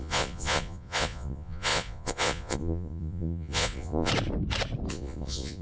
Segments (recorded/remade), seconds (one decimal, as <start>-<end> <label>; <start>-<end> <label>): 0.0-4.1 remade; 4.1-4.9 recorded; 4.9-5.6 remade